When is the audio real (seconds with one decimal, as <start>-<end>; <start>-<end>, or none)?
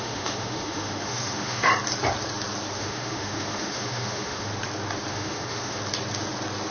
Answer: 1.7-2.8; 4.5-5.1; 5.8-6.7